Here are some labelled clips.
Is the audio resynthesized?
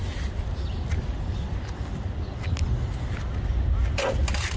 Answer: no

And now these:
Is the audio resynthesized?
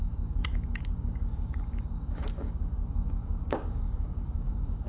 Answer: yes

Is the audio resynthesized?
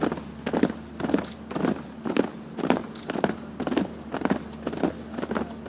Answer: no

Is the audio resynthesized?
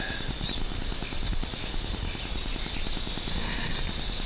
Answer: no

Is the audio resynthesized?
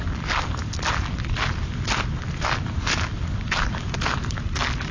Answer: no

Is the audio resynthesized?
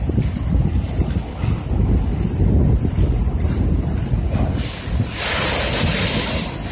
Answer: no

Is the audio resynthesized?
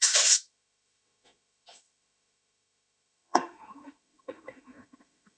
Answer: yes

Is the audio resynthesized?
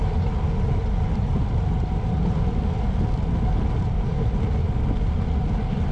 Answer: no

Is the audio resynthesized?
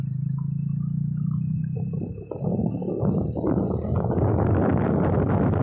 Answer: no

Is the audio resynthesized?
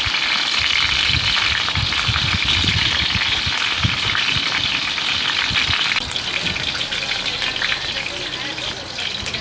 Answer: no